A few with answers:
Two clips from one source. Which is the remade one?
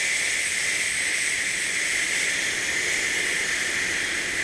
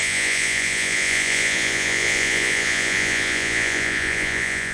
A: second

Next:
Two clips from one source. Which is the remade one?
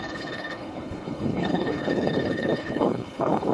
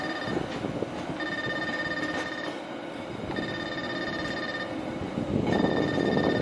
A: first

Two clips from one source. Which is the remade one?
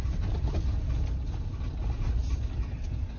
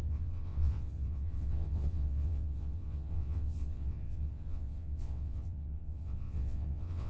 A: second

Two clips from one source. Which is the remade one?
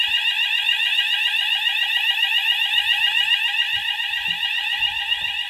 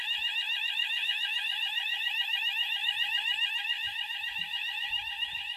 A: second